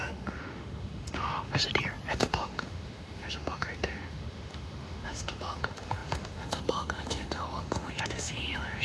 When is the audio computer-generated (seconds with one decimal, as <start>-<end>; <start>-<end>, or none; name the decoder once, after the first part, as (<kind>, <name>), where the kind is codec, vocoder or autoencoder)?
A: 0.0-1.6 (autoencoder, DAC-VAE); 2.1-8.8